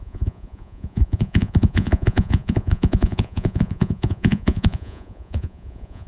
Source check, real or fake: fake